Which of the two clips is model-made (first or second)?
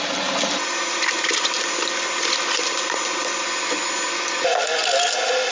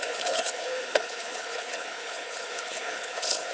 second